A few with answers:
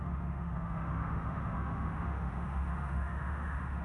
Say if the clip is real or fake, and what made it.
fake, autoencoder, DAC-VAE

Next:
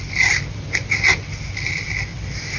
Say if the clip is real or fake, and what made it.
real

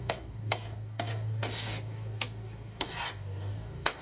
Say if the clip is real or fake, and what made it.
fake, codec, DAC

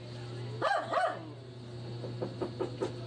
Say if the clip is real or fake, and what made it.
real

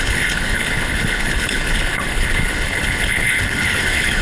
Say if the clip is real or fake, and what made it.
fake, codec, HILCodec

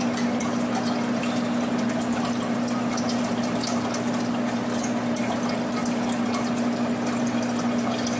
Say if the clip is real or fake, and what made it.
fake, vocoder, BigVGAN v2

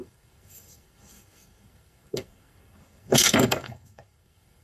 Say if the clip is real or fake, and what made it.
fake, codec, SNAC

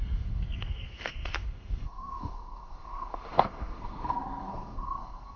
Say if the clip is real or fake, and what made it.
fake, codec, SNAC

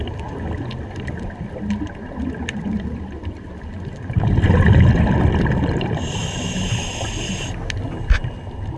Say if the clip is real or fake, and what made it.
real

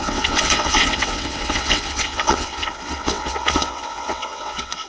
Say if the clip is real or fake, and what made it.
fake, vocoder, WaveNeXt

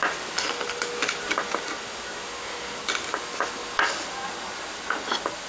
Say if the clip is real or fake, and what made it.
real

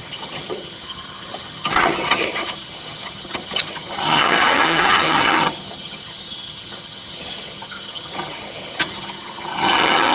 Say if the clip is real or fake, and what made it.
fake, vocoder, HiFi-GAN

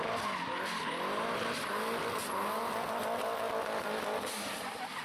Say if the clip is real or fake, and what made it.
real